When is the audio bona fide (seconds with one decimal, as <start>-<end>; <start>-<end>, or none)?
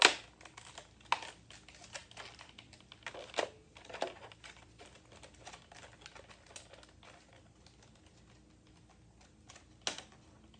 0.0-10.6